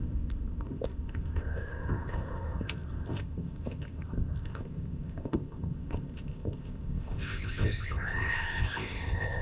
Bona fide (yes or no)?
no